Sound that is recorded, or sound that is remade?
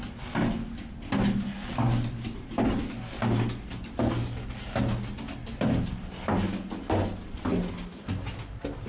recorded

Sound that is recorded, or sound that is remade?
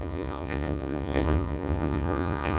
remade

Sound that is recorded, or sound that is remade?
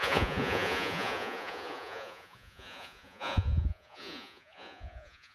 remade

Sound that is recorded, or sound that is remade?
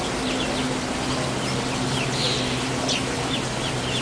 recorded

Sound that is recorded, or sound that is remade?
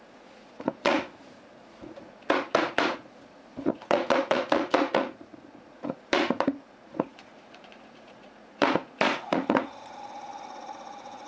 remade